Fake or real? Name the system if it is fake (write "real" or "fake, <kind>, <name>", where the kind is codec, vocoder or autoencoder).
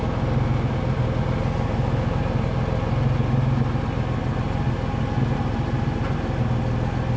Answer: real